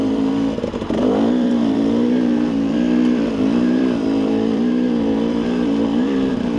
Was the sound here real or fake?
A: fake